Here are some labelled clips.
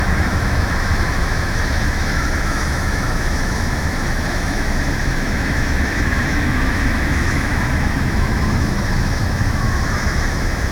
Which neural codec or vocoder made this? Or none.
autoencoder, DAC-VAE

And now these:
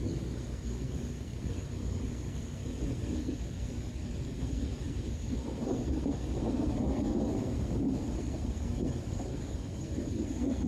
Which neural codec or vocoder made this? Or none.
codec, SNAC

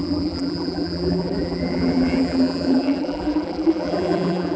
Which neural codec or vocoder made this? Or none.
vocoder, BigVGAN v2